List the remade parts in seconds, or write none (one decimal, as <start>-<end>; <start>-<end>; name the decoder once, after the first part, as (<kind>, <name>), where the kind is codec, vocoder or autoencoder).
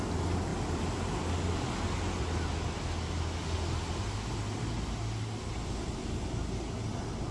none